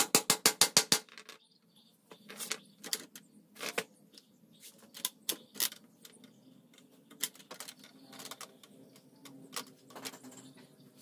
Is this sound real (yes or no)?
yes